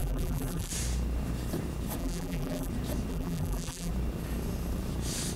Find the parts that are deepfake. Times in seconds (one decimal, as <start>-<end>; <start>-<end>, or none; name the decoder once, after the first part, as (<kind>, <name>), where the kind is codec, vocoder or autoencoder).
0.0-0.7 (vocoder, BigVGAN v2); 2.0-2.7; 3.1-3.9